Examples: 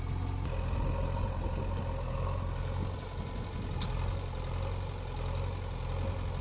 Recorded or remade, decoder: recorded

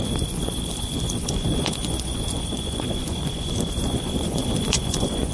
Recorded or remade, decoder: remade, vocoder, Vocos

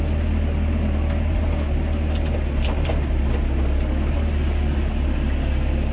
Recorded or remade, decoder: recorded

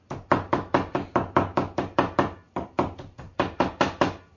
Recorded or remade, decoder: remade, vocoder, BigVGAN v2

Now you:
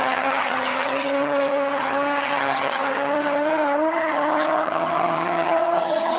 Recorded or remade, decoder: remade, vocoder, HiFi-GAN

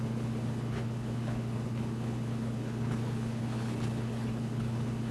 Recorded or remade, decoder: remade, codec, HILCodec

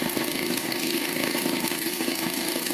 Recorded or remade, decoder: remade, codec, DAC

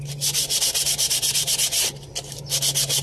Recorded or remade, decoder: recorded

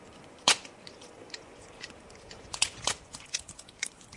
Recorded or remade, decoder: remade, vocoder, Vocos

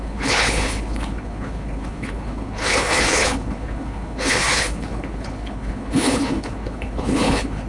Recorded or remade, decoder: remade, codec, HILCodec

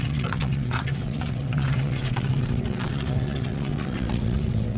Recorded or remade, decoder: remade, vocoder, WaveNeXt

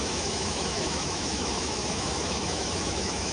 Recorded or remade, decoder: remade, autoencoder, DAC-VAE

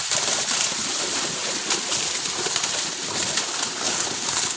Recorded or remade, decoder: recorded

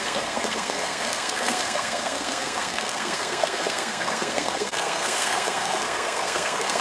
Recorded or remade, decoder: remade, codec, SNAC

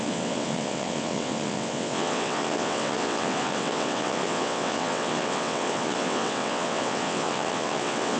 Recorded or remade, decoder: remade, vocoder, WaveNeXt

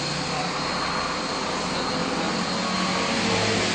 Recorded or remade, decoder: recorded